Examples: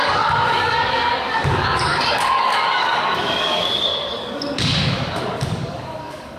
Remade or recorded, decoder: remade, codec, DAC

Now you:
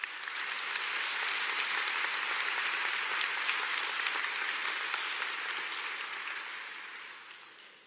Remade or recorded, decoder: recorded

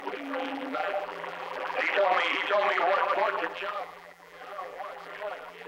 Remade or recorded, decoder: remade, vocoder, BigVGAN v2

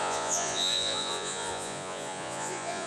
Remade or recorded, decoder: remade, vocoder, Vocos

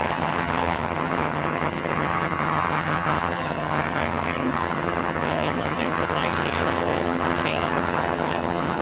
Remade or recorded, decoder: remade, vocoder, HiFi-GAN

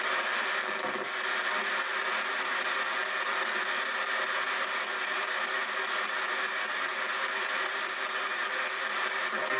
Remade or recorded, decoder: recorded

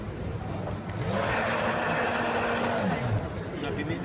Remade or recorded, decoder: recorded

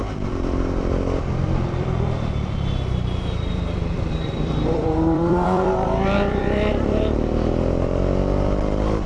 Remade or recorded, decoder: remade, vocoder, BigVGAN v2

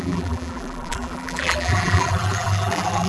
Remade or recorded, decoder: remade, vocoder, BigVGAN v2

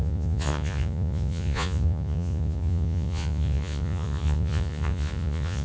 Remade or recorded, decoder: remade, vocoder, Vocos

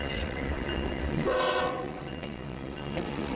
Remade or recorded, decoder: remade, vocoder, WaveNeXt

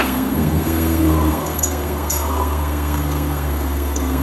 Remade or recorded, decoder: remade, codec, SNAC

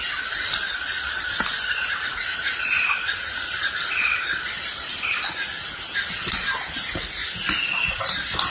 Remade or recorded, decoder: recorded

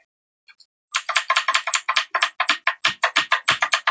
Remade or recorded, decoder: recorded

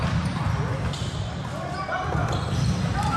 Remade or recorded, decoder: recorded